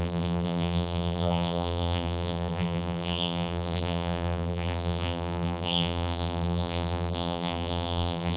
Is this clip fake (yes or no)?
yes